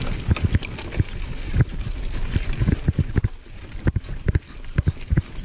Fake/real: real